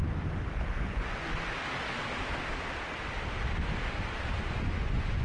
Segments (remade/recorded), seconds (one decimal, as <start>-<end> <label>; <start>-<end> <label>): 0.0-0.8 recorded; 0.8-1.3 remade; 1.3-4.4 recorded; 4.4-5.2 remade